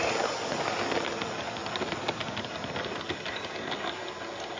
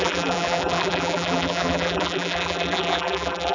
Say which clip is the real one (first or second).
first